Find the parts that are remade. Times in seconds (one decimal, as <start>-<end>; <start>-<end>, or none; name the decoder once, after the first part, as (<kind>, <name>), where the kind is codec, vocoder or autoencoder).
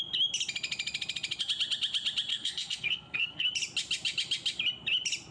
2.3-3.5 (codec, SNAC)